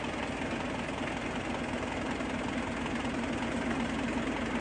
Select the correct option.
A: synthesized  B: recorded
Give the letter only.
B